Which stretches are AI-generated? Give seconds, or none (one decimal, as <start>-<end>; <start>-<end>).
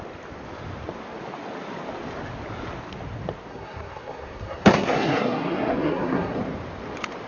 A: 3.5-6.4